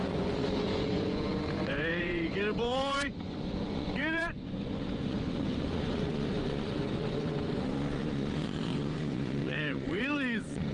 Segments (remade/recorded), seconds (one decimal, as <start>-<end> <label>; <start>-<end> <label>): 0.0-10.7 remade